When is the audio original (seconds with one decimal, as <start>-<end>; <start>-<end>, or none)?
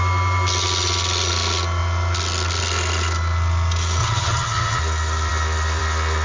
0.0-4.0; 4.8-6.2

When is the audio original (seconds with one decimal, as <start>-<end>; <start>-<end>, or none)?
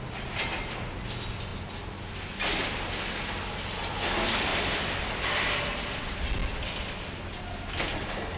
0.0-4.5; 5.6-8.4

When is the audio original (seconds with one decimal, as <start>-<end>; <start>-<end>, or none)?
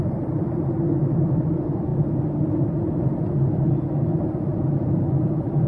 1.9-4.4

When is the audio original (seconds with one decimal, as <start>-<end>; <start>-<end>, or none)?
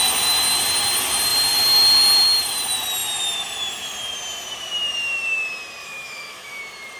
0.0-5.8; 6.6-7.0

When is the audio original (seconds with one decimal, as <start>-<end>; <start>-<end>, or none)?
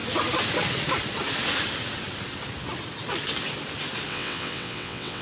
0.0-4.1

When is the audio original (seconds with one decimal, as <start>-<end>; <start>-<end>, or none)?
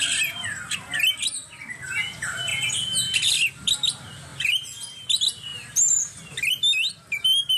0.0-7.6